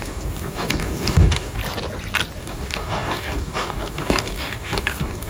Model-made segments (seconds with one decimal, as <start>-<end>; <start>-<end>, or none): 0.0-1.6; 2.4-5.3